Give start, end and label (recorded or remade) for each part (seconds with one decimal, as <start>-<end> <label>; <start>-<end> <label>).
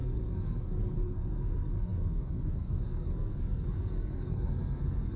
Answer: 0.0-5.2 remade